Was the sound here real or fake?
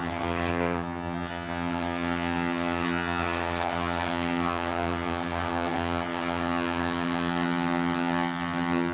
fake